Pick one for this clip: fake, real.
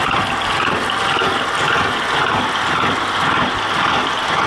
real